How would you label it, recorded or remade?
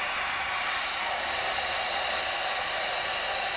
recorded